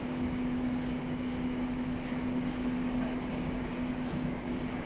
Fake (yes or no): yes